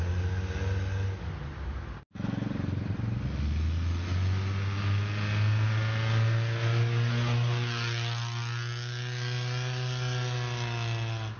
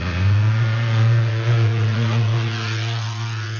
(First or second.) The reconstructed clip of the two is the second